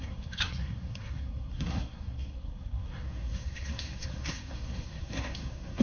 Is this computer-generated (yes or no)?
yes